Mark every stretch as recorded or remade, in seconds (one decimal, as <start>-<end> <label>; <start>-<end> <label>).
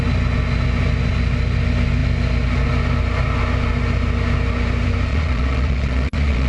0.0-5.1 recorded; 5.1-6.5 remade